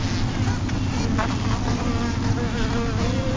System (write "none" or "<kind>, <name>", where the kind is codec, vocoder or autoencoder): none